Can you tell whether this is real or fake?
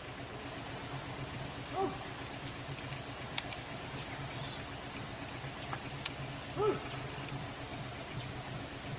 real